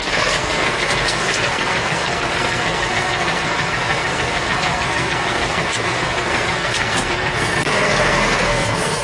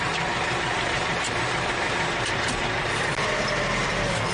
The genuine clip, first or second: second